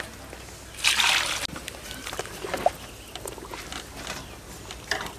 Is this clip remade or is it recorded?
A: recorded